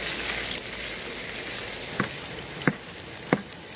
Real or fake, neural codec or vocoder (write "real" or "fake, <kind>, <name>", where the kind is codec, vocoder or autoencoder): real